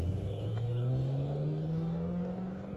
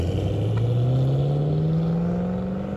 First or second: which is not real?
first